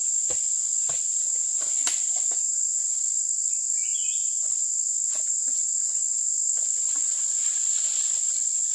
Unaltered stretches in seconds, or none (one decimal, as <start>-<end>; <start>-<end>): 0.0-1.5; 2.1-2.8; 4.6-6.5; 8.0-8.7